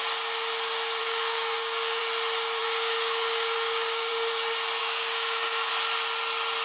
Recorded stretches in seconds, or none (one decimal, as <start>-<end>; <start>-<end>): 0.0-1.0; 2.0-2.6; 4.1-4.8; 5.7-6.6